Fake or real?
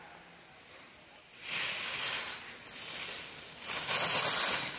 real